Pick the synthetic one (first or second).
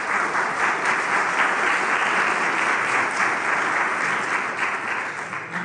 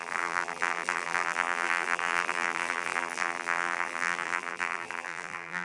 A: second